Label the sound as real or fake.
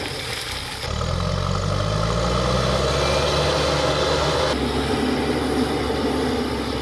real